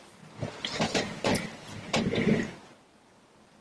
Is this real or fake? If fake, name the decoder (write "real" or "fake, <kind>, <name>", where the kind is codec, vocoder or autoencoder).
real